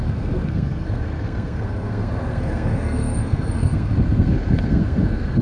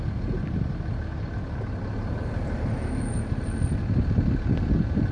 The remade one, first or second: first